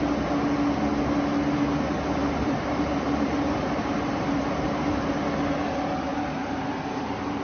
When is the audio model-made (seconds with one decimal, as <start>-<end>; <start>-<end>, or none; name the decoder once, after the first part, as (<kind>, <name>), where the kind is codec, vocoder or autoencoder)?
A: 2.2-5.1 (vocoder, BigVGAN v2); 6.1-6.8